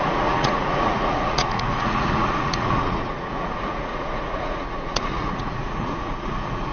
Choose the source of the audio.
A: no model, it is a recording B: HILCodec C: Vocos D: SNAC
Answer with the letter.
C